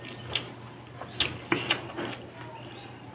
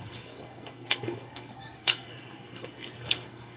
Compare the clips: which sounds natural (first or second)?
first